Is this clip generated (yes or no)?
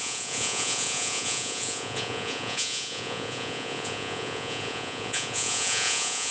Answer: yes